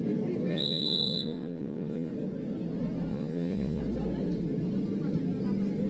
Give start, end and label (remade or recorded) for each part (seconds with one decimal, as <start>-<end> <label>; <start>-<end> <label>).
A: 0.0-0.5 recorded; 0.5-2.1 remade; 2.1-3.1 recorded; 3.1-3.8 remade; 3.8-5.9 recorded